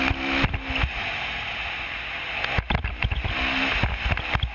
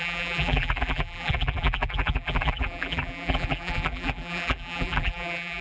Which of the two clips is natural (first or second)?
first